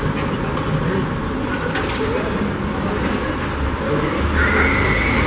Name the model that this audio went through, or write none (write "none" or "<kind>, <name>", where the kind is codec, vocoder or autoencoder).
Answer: none